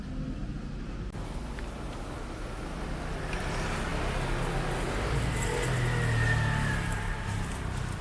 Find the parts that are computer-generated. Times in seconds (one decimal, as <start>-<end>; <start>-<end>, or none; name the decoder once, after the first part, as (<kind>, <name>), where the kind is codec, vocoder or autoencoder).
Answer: none